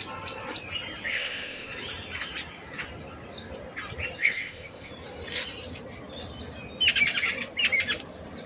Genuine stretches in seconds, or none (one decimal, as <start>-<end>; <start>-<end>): 0.0-1.1; 1.7-4.2; 4.9-8.5

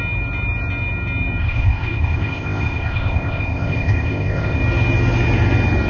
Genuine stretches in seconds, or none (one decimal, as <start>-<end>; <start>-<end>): 0.0-1.4; 4.6-5.9